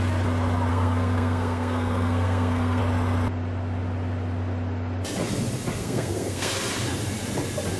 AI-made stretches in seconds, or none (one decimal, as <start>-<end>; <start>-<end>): 0.7-2.8; 5.8-6.5